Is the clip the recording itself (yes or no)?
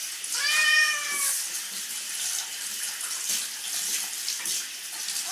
yes